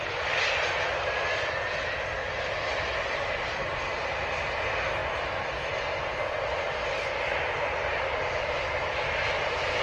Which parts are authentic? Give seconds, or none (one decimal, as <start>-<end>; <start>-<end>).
0.0-9.8